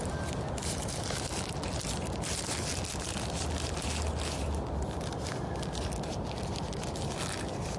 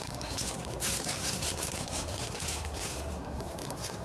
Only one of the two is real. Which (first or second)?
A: first